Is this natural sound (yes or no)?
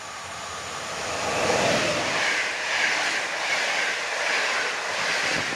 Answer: yes